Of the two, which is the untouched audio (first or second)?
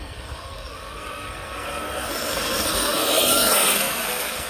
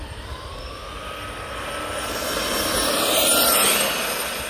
second